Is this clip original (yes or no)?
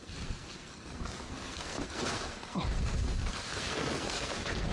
no